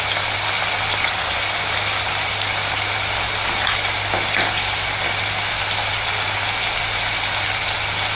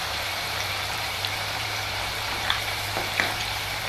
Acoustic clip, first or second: first